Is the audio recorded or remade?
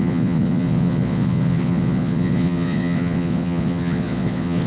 remade